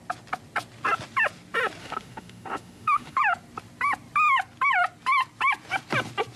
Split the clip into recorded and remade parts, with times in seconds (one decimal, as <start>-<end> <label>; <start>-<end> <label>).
0.0-1.8 recorded; 1.8-3.2 remade; 3.2-6.4 recorded